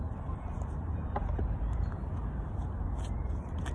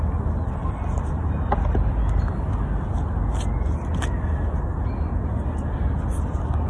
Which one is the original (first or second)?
second